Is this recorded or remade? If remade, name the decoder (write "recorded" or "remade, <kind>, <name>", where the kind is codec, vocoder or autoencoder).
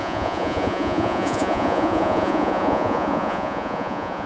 remade, vocoder, Vocos